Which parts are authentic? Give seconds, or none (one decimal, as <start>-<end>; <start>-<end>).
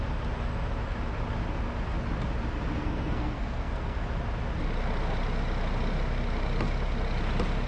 0.0-2.8; 4.0-7.7